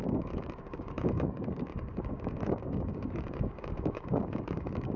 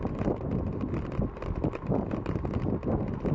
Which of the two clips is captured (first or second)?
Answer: second